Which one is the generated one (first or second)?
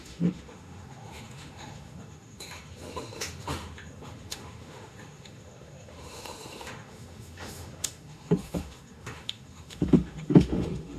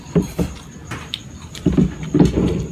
first